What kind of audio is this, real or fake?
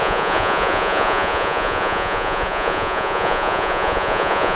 fake